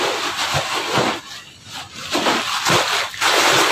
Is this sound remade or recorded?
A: recorded